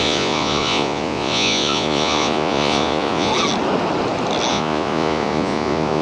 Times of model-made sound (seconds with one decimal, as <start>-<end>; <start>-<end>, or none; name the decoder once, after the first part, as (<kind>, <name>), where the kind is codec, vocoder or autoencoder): 0.0-3.3 (vocoder, Vocos); 4.5-6.0